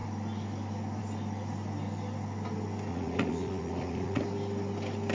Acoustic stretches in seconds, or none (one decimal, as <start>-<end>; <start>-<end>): 0.0-2.9; 4.2-5.1